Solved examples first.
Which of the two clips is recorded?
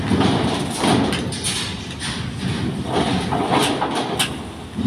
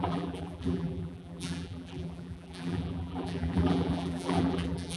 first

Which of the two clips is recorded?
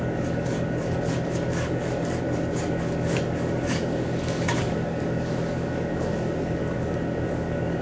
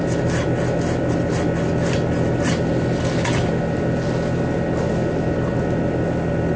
second